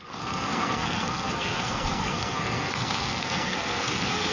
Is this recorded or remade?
remade